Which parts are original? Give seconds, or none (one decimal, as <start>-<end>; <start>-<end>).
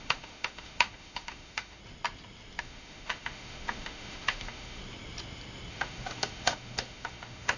1.8-2.6; 4.8-5.7